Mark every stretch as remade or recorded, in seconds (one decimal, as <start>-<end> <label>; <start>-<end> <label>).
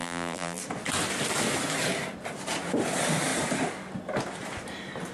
0.0-0.6 remade; 0.6-5.1 recorded